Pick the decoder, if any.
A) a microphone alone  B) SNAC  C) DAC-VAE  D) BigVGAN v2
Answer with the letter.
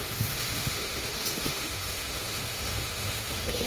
C